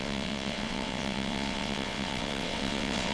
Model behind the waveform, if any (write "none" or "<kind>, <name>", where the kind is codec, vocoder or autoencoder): vocoder, WaveNeXt